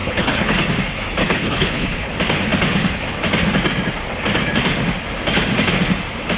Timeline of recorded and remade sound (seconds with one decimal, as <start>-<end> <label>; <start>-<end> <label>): 0.0-0.6 remade; 0.6-1.2 recorded; 1.2-2.1 remade; 2.1-6.4 recorded